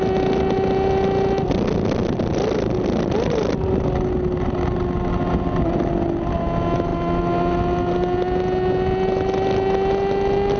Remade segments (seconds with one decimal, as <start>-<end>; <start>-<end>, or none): none